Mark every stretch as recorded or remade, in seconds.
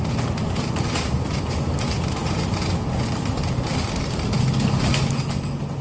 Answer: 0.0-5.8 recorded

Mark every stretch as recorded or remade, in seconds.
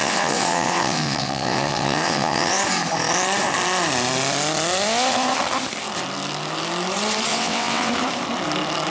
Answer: 0.0-2.6 remade; 2.6-7.3 recorded; 7.3-7.9 remade; 7.9-8.9 recorded